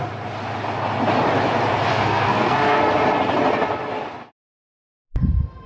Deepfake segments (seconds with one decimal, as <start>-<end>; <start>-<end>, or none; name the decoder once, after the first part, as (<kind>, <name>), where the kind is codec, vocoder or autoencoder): 1.9-2.8 (codec, SNAC)